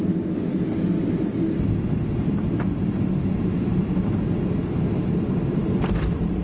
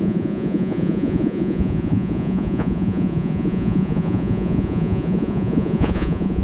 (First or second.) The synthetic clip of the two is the second